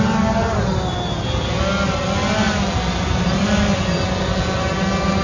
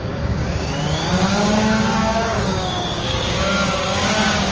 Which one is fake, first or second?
second